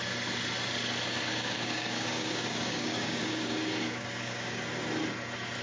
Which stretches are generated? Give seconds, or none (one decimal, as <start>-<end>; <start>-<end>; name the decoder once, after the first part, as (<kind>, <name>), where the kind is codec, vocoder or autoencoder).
1.3-4.7 (codec, DAC)